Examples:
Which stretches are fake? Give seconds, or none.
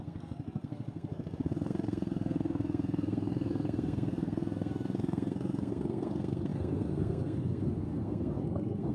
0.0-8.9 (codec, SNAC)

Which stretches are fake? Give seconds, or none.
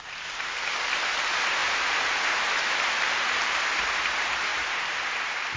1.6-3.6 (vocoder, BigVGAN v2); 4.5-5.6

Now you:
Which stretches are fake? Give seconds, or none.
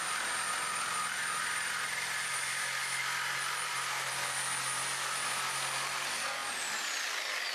none